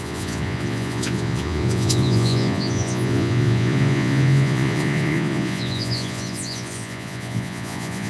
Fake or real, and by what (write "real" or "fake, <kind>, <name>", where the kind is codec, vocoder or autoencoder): fake, vocoder, Vocos